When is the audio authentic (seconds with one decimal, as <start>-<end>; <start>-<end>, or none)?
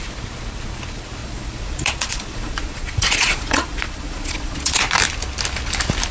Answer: 0.0-1.2; 4.9-6.1